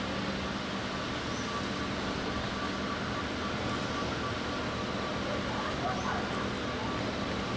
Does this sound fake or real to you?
real